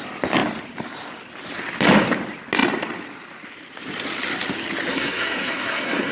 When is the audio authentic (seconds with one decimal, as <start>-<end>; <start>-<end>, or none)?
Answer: 0.0-4.9